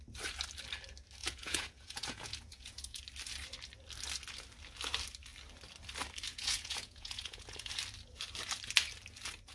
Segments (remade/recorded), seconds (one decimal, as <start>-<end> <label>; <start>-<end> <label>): 0.0-1.2 recorded; 1.2-3.0 remade; 3.0-6.3 recorded; 6.3-7.7 remade; 7.7-9.5 recorded